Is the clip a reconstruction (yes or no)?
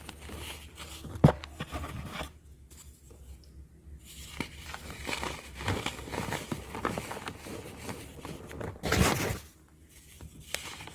no